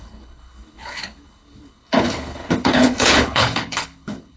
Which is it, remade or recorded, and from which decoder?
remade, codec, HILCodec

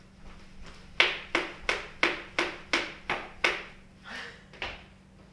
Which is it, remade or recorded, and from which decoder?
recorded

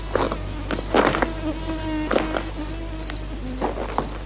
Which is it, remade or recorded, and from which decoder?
recorded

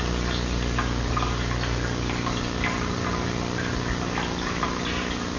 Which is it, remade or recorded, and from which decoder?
recorded